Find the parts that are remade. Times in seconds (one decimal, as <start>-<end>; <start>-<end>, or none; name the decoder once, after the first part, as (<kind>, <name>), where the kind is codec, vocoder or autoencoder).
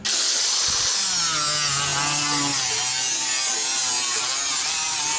none